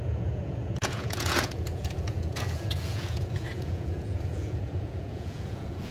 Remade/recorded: remade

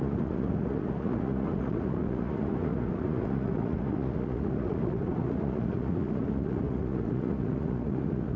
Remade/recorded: remade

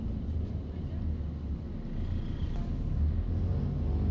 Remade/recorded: recorded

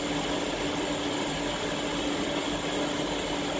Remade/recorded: recorded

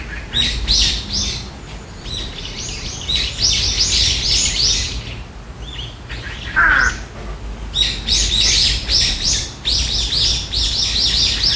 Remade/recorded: recorded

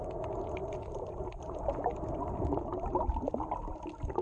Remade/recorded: recorded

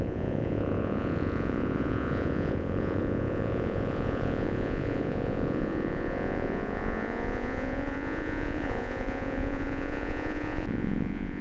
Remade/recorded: remade